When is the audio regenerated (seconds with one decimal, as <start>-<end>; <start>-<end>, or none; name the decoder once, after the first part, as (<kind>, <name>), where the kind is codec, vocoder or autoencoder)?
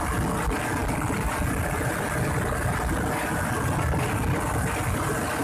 none